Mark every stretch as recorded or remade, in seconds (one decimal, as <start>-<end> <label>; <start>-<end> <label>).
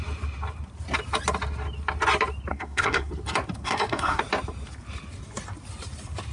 0.0-2.5 recorded; 2.5-3.1 remade; 3.1-3.6 recorded; 3.6-4.2 remade; 4.2-6.3 recorded